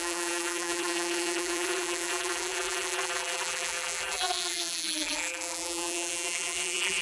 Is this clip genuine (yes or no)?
no